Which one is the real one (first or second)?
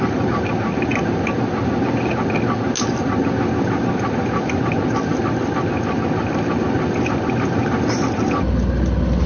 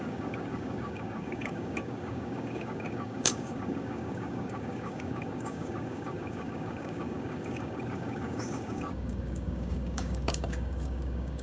first